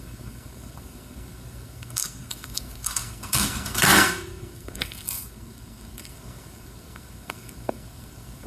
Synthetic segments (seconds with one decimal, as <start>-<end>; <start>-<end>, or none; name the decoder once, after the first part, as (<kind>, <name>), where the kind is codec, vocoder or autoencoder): 0.0-8.5 (codec, SNAC)